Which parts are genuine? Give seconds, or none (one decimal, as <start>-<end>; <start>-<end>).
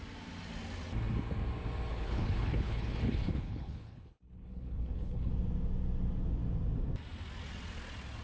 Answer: 0.0-1.9; 5.3-8.2